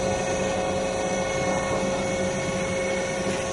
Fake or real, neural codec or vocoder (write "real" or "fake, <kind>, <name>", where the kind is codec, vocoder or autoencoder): real